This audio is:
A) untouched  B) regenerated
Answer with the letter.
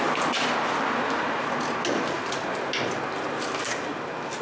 A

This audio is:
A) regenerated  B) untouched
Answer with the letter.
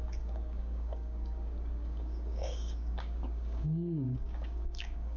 A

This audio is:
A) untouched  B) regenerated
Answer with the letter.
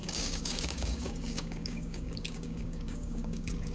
B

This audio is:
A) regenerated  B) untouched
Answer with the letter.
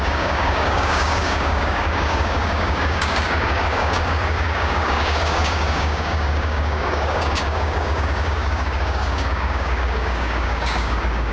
A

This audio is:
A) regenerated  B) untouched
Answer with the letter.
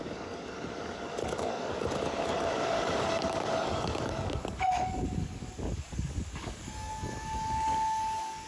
A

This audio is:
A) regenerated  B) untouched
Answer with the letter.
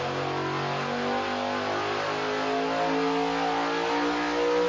B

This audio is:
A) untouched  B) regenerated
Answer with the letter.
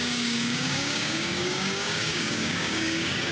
B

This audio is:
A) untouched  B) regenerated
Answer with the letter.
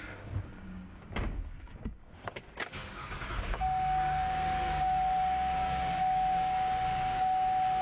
B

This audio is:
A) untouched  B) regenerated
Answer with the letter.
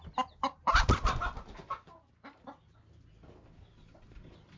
A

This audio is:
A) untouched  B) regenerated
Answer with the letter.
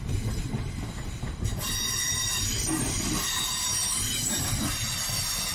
A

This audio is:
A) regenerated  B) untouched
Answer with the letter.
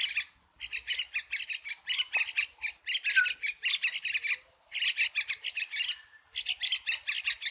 B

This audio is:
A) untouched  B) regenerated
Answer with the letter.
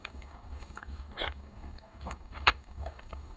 B